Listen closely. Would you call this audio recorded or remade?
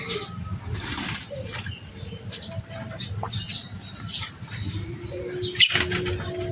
recorded